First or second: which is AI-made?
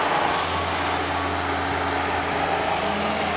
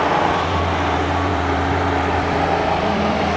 second